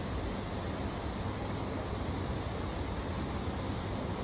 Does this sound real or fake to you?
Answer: real